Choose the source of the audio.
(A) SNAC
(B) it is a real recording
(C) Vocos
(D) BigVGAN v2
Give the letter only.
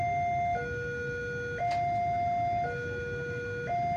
B